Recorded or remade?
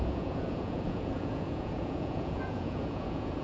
remade